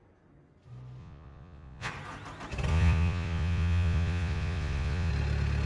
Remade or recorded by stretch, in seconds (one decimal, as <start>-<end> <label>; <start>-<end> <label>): 0.0-1.0 recorded; 1.0-1.9 remade; 1.9-2.7 recorded; 2.7-5.1 remade; 5.1-5.7 recorded